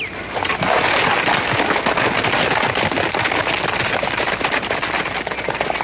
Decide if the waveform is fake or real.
real